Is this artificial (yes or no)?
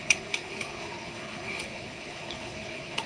yes